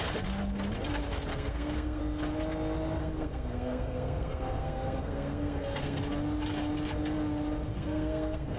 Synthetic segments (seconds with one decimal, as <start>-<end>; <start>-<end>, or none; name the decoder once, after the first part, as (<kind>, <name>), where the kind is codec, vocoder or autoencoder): 1.3-2.0 (codec, SNAC); 3.0-6.0; 7.7-8.6